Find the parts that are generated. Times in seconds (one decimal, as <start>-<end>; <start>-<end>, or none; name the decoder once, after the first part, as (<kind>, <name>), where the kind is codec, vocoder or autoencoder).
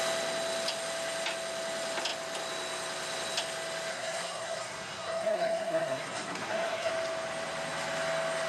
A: 3.9-6.9 (codec, SNAC)